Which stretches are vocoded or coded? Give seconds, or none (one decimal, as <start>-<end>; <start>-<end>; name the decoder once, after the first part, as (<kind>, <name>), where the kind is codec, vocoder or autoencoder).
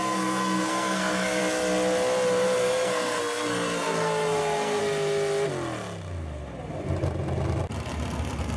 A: 0.0-1.4 (codec, SNAC); 2.6-4.8